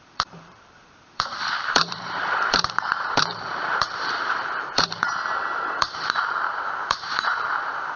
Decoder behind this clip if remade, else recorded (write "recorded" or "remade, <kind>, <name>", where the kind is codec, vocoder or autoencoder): remade, vocoder, BigVGAN v2